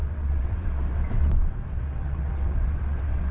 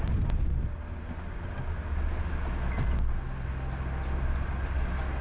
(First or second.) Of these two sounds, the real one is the second